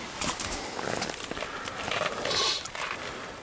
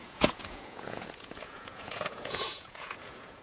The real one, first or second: first